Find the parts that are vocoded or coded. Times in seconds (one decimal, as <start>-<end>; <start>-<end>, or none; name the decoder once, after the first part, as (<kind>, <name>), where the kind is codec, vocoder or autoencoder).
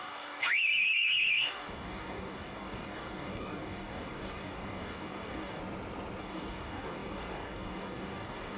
0.0-5.6 (codec, DAC); 6.2-8.6